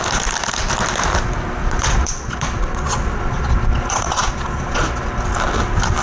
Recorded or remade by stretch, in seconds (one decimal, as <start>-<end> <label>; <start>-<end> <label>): 0.0-1.6 recorded; 1.6-5.2 remade; 5.2-6.0 recorded